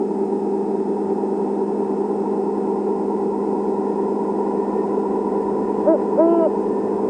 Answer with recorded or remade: recorded